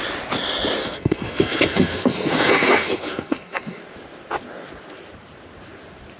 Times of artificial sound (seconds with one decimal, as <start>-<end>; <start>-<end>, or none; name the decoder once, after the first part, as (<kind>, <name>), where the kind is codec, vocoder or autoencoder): 0.8-3.8 (codec, SNAC)